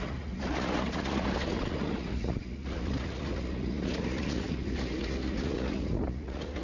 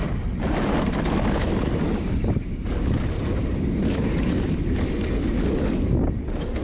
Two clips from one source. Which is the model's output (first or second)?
first